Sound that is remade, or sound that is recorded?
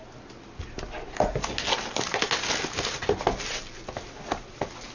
recorded